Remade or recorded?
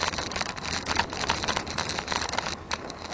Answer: remade